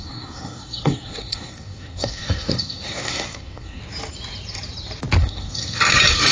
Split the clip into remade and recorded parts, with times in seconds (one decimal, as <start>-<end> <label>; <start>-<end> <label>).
0.0-3.8 remade; 3.8-5.2 recorded; 5.2-5.8 remade; 5.8-6.3 recorded